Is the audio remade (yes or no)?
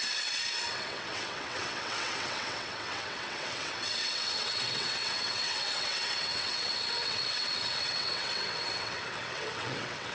yes